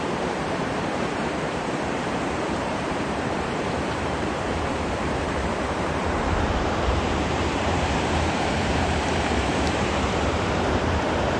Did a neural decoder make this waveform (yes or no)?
yes